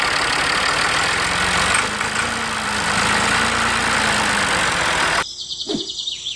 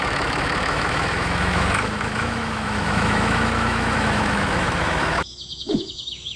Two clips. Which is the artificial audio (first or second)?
second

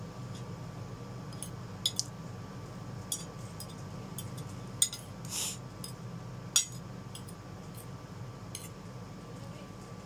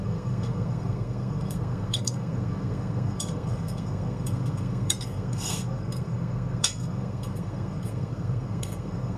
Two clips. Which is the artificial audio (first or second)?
second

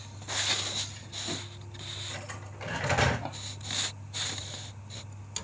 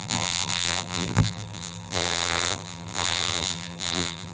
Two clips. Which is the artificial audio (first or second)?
second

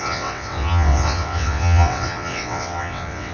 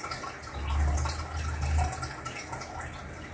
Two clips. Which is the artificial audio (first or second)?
first